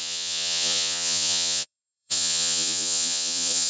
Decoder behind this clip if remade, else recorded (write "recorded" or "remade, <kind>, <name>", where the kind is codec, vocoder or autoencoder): remade, vocoder, Vocos